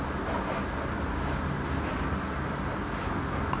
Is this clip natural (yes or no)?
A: yes